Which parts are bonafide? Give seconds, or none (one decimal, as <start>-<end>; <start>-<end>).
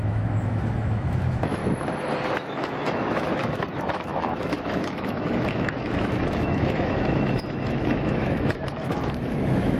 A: 1.6-2.3